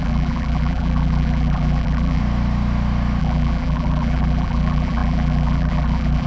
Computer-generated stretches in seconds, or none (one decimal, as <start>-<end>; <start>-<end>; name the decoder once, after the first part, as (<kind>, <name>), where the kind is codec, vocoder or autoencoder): 0.0-2.2 (vocoder, BigVGAN v2); 3.2-6.3